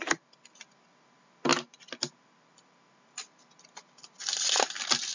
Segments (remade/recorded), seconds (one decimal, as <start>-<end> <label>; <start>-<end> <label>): 0.0-5.1 recorded